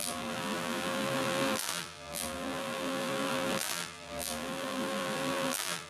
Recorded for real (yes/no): no